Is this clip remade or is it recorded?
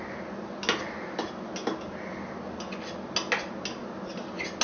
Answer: recorded